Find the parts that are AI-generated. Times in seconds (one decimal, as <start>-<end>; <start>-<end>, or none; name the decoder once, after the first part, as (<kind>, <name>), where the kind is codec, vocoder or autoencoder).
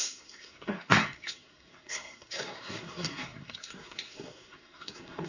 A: 0.0-5.3 (codec, SNAC)